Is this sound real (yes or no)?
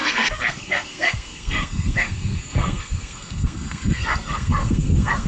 no